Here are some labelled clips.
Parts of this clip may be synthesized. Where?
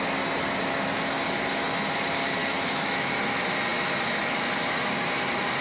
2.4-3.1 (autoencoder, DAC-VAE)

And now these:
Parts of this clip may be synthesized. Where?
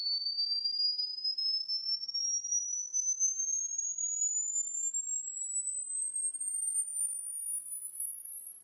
1.6-2.2 (autoencoder, DAC-VAE); 2.8-3.3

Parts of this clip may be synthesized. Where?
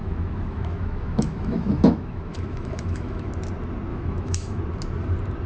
0.0-3.3 (autoencoder, DAC-VAE); 3.9-4.6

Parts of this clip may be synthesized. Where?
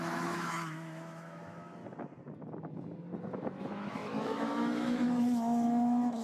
0.0-1.8 (autoencoder, DAC-VAE); 3.6-6.2